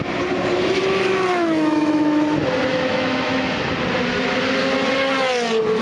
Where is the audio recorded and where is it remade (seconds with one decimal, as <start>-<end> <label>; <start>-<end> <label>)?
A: 0.0-1.3 recorded; 1.3-2.2 remade; 2.2-2.7 recorded; 2.7-3.5 remade; 3.5-5.8 recorded